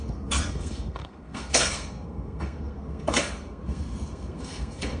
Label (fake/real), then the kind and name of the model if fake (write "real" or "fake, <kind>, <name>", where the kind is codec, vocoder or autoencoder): fake, codec, SNAC